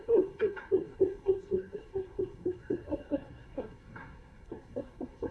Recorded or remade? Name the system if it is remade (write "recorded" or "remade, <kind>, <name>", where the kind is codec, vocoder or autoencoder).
remade, codec, SNAC